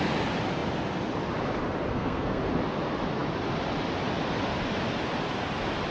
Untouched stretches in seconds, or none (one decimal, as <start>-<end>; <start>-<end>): 0.0-1.9; 2.4-5.9